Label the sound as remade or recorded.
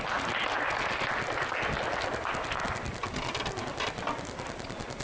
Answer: recorded